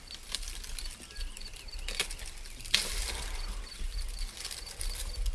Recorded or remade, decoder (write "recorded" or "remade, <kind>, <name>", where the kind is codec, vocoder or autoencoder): recorded